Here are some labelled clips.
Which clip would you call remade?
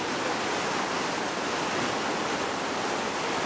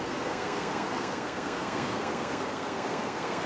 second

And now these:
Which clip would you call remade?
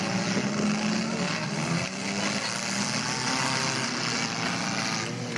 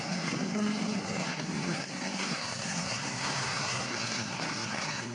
second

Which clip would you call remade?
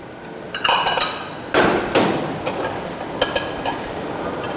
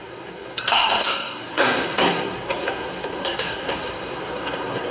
second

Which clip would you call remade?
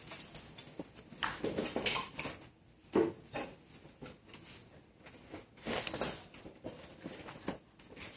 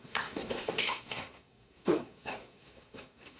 second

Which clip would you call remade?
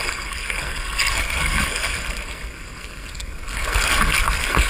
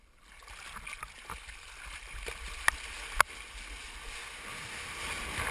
first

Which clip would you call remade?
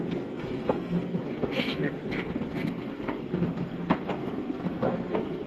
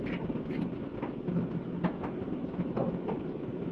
first